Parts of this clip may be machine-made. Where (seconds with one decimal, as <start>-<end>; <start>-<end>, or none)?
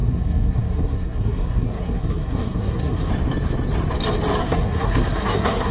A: 0.0-3.1; 4.4-5.7